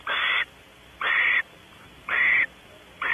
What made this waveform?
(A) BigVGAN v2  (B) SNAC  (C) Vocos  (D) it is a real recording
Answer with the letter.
D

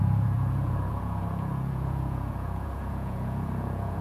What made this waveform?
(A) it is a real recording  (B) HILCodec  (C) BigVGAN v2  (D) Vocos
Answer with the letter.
D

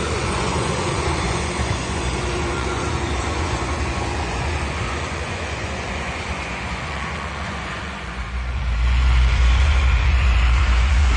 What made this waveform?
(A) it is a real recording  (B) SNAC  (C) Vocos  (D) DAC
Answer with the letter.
C